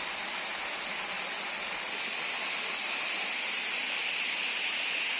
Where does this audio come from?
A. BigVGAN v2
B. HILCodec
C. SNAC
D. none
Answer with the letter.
D